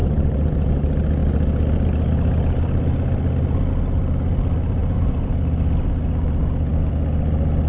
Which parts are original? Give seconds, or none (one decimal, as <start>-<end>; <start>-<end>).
0.7-4.8; 5.3-7.7